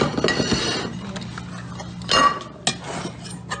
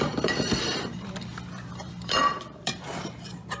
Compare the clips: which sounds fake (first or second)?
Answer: second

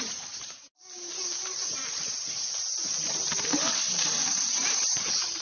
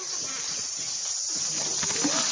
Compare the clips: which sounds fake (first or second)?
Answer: first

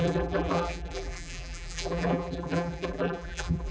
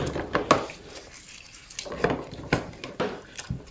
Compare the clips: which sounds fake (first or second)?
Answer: first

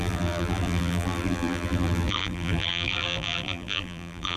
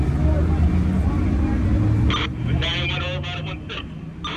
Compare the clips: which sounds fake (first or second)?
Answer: first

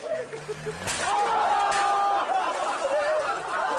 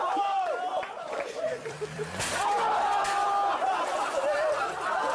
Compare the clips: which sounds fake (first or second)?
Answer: second